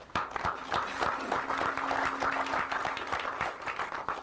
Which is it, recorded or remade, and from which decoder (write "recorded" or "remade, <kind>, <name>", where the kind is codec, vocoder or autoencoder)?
recorded